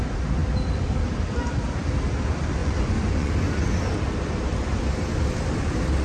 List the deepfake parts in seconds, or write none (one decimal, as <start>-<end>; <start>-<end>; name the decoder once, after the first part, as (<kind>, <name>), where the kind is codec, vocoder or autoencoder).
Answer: 2.6-3.3 (vocoder, Vocos)